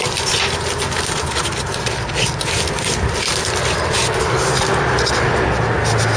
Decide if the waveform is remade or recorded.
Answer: recorded